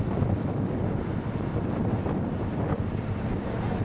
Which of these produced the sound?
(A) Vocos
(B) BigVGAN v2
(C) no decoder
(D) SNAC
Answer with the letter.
C